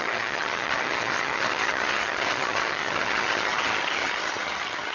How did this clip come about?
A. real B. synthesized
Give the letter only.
B